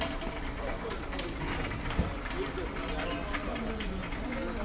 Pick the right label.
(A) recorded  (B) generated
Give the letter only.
A